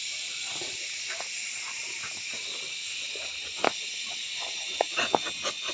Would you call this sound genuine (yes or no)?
yes